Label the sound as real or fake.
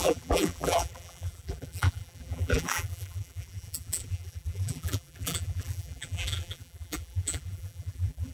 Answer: fake